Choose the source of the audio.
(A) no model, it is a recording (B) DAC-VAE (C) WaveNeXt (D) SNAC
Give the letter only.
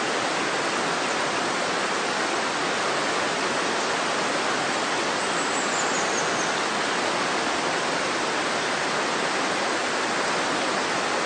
A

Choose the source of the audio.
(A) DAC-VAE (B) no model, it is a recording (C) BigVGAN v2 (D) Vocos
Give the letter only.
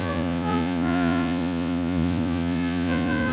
D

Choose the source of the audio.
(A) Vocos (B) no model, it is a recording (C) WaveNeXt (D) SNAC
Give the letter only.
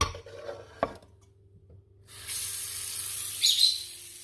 B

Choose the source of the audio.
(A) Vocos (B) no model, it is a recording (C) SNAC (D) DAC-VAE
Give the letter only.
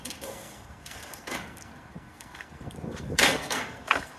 C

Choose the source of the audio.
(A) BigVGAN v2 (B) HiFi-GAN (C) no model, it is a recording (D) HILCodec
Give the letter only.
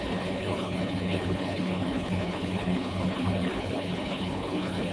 D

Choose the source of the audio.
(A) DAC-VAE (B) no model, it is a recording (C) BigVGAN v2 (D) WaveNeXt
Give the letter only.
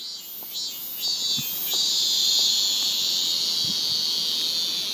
B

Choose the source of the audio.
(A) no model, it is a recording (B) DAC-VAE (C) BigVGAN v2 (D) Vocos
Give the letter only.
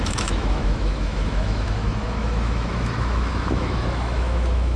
B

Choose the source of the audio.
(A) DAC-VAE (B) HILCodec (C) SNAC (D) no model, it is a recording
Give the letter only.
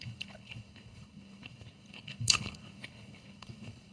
B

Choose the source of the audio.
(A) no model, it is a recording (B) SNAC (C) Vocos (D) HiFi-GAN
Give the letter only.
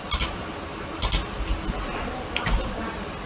A